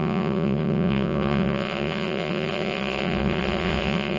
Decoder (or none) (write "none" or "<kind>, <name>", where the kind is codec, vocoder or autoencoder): vocoder, Vocos